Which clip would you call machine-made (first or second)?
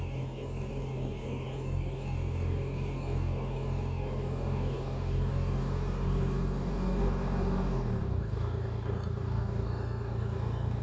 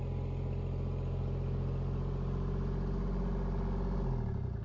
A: first